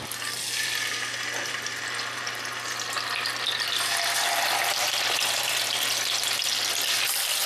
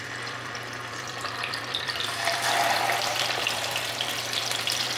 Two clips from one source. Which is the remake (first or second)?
second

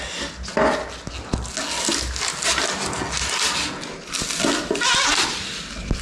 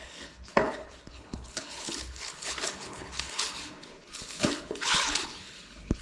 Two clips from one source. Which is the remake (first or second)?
second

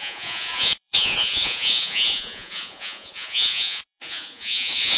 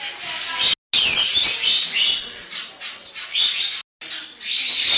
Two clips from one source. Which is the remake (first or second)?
first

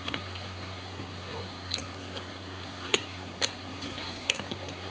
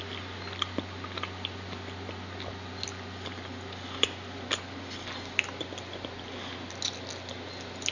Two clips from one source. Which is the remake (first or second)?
first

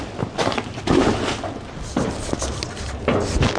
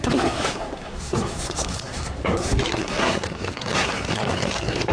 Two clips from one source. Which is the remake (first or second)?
second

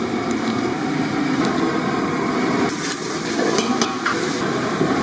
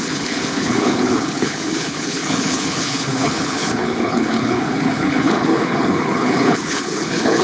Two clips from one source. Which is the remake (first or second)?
second